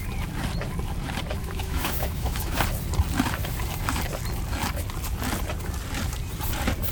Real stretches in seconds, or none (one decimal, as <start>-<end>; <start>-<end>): 0.0-1.4; 2.6-6.9